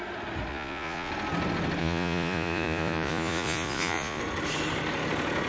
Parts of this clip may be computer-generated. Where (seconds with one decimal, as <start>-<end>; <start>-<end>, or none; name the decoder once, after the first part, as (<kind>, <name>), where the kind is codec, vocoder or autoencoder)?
0.5-1.1 (vocoder, Vocos); 1.8-4.2